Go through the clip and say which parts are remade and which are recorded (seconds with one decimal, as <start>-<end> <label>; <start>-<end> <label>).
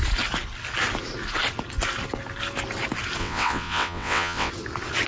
0.0-3.2 recorded; 3.2-4.5 remade; 4.5-5.1 recorded